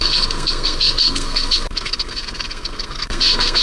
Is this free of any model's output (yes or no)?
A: no